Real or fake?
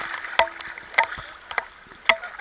real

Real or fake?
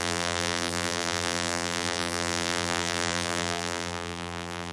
fake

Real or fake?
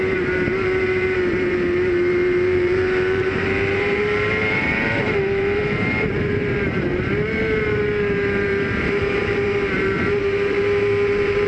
fake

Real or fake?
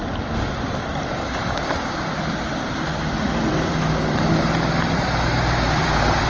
fake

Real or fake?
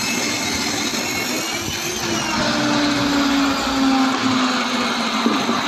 real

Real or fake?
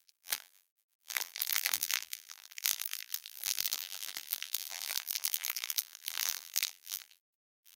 fake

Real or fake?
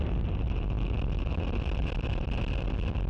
real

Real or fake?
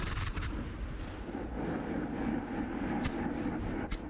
real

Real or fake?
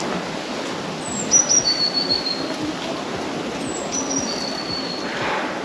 real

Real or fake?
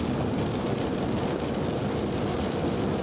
fake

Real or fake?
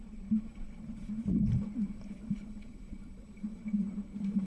fake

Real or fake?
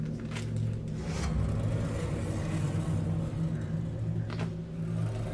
real